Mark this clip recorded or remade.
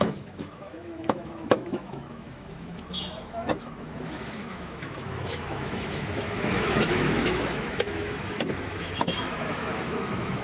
remade